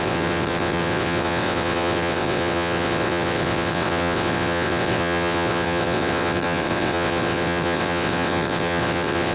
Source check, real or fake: fake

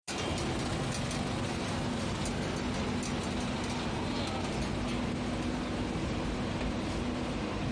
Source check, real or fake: real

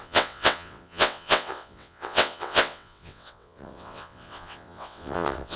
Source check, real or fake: fake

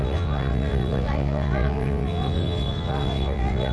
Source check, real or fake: fake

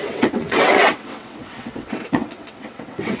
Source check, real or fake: fake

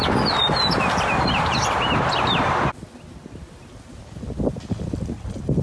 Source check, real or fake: real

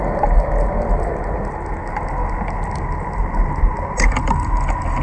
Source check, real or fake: real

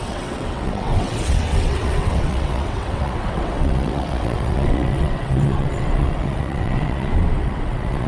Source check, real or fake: fake